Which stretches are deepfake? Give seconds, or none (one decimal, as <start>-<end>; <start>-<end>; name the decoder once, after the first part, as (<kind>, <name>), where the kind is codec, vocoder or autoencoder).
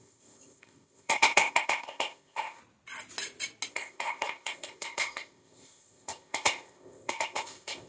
0.0-2.6 (codec, ZipCodec); 3.7-7.9